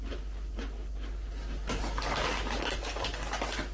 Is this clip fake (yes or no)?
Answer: no